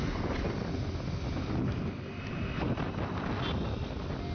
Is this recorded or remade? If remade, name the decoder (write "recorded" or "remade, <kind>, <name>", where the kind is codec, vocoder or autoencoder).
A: recorded